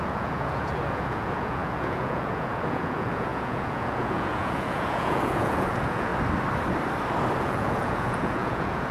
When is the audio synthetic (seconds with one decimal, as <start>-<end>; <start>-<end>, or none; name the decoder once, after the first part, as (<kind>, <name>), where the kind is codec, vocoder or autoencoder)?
0.0-6.1 (vocoder, Vocos); 7.4-8.9